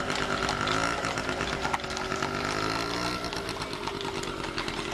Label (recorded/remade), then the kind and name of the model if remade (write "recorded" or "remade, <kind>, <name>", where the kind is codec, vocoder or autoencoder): recorded